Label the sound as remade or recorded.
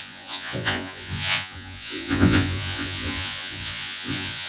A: remade